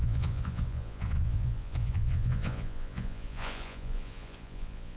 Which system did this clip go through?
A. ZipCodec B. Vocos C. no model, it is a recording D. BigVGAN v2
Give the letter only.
B